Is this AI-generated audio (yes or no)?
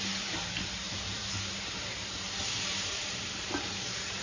yes